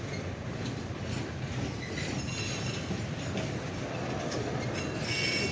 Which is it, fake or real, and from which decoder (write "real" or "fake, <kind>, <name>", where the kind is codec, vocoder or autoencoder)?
real